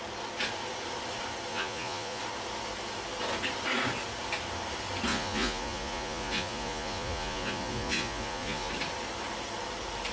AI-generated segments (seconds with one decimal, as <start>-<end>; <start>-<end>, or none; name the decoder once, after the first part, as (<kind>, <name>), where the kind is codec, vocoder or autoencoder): 1.5-2.2 (vocoder, Vocos); 5.1-8.7